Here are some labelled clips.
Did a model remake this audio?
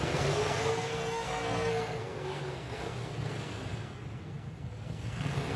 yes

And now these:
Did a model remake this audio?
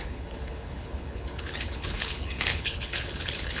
yes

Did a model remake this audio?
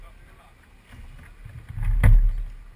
no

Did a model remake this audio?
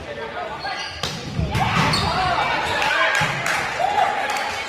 no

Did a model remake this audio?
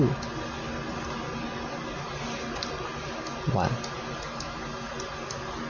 no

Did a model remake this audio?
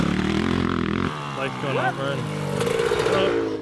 no